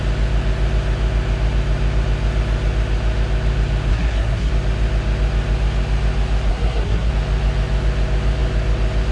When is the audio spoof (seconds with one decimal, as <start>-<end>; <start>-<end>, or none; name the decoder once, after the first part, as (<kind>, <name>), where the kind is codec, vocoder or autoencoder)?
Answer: 3.9-4.5 (codec, SNAC); 6.5-7.1